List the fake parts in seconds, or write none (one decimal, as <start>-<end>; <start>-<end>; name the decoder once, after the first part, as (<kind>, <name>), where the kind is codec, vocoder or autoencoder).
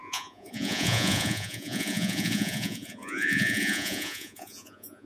0.0-5.1 (vocoder, Vocos)